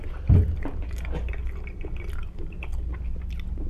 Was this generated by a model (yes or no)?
no